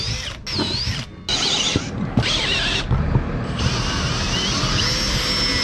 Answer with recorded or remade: recorded